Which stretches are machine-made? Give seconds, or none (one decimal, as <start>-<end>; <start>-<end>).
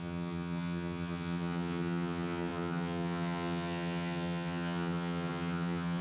0.0-6.0